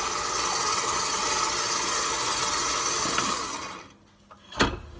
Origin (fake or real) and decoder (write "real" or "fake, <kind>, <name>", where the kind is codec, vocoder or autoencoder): real